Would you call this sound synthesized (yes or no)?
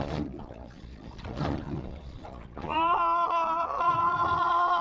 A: yes